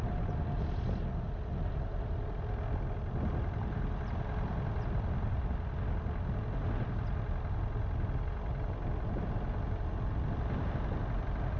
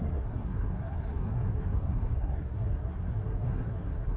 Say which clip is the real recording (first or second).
first